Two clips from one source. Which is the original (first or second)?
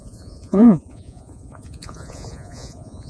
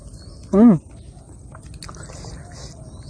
second